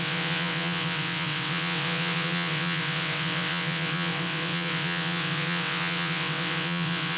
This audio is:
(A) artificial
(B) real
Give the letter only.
A